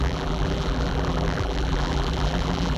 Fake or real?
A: fake